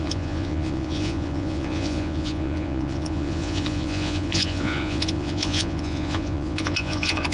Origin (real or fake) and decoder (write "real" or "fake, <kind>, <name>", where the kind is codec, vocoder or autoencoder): fake, vocoder, Vocos